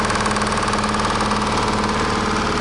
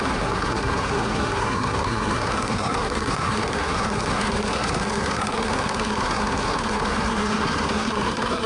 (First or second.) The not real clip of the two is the second